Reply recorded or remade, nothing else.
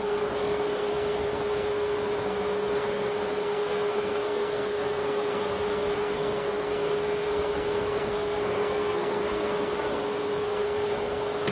remade